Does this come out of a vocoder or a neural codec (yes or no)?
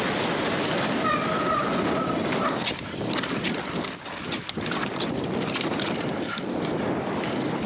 yes